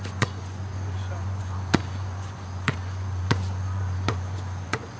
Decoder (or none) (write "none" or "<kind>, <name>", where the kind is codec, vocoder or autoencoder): vocoder, Vocos